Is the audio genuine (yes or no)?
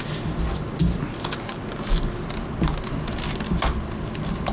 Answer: yes